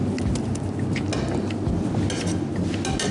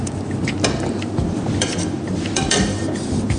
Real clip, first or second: first